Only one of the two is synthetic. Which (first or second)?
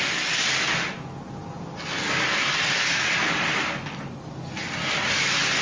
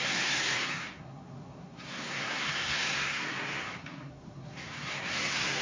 second